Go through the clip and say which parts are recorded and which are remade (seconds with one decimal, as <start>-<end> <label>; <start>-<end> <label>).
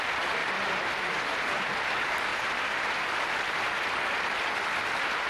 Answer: 0.0-0.4 recorded; 0.4-1.7 remade; 1.7-2.3 recorded; 2.3-2.9 remade; 2.9-5.3 recorded